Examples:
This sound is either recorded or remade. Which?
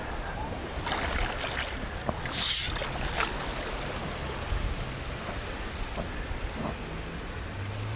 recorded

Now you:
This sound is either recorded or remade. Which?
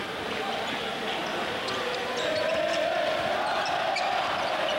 recorded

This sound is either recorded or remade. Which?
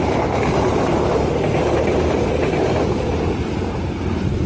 recorded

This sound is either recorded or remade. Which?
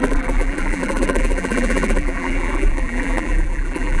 remade